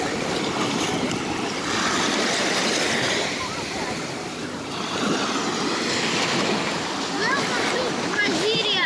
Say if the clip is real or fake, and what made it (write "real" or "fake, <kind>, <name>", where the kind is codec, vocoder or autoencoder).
real